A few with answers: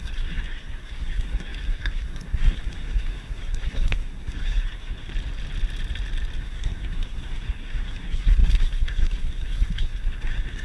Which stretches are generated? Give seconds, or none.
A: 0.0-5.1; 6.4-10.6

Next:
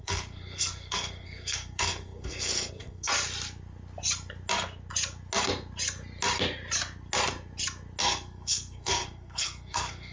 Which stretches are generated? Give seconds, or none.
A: 0.0-3.1; 8.0-10.1

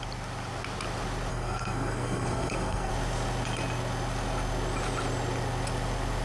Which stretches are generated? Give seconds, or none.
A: 1.3-2.9

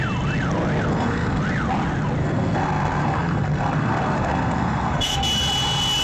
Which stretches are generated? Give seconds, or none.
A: 0.9-1.4; 2.2-5.2

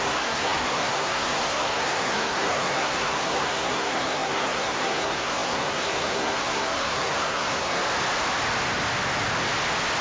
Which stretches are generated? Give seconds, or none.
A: 0.0-7.8

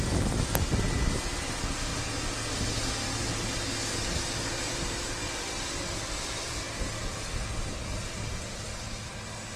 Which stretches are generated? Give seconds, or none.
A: none

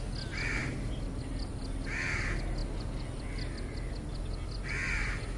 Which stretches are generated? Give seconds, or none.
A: none

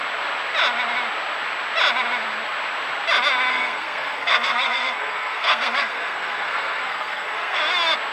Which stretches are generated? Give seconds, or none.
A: 3.5-7.6